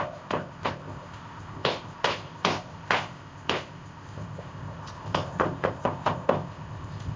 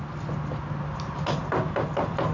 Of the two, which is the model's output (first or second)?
first